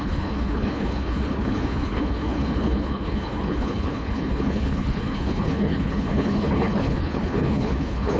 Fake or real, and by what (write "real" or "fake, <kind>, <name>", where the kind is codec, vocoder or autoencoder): fake, codec, HILCodec